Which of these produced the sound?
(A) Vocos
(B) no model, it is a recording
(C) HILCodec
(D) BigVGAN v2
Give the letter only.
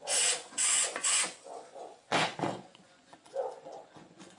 A